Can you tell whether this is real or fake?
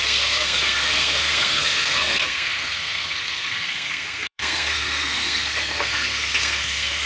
fake